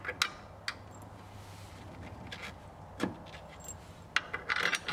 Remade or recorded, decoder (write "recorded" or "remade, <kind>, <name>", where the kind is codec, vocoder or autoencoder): recorded